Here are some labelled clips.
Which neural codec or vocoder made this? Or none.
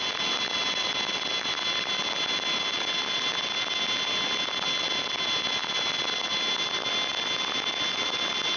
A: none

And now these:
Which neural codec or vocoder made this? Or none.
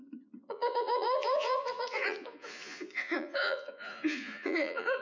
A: vocoder, Vocos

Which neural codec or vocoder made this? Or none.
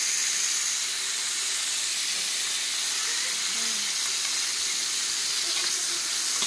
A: none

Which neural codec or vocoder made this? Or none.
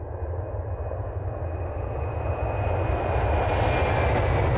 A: none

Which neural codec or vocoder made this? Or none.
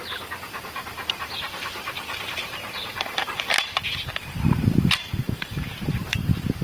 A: vocoder, BigVGAN v2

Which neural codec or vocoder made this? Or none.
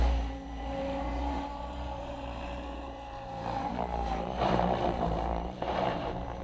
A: vocoder, BigVGAN v2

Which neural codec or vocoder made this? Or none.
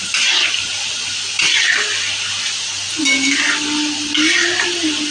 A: none